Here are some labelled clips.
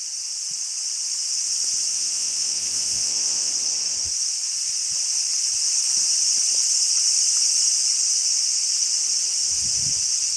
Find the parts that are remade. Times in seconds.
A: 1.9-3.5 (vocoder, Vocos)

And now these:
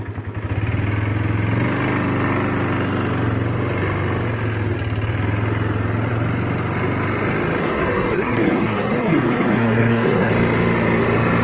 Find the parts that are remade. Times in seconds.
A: 7.6-10.3 (codec, SNAC)

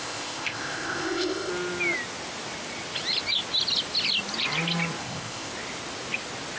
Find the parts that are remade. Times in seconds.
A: 0.0-1.5 (codec, ZipCodec); 5.0-5.5